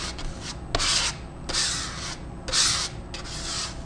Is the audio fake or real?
real